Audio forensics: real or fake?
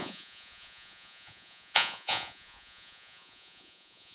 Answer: fake